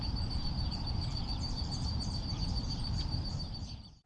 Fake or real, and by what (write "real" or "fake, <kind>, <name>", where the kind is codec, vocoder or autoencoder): fake, vocoder, BigVGAN v2